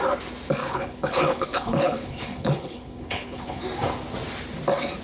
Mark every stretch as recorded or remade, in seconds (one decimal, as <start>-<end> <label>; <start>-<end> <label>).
0.0-0.6 recorded; 0.6-3.6 remade; 3.6-5.0 recorded